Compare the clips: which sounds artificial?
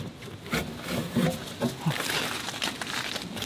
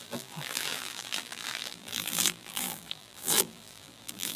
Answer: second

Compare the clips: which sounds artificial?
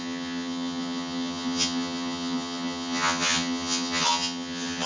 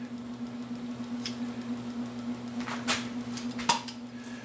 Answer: first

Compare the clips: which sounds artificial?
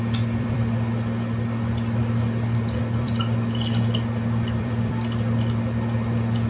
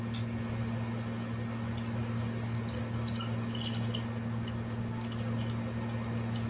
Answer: first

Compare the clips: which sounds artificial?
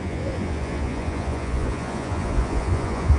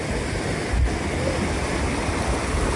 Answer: first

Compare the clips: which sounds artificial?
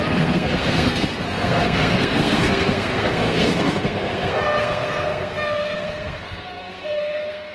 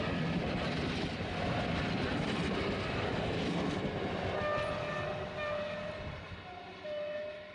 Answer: first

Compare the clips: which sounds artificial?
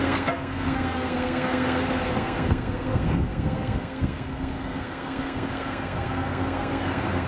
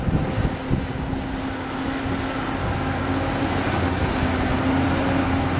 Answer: first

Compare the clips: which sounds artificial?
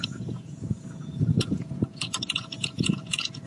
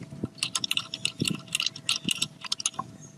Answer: first